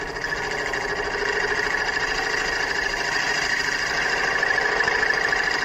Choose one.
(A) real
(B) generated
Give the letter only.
A